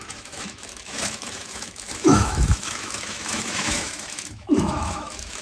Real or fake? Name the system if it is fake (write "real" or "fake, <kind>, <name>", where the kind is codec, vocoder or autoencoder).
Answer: fake, autoencoder, DAC-VAE